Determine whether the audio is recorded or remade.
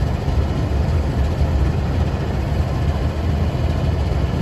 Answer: recorded